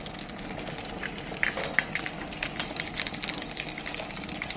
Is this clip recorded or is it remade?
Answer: recorded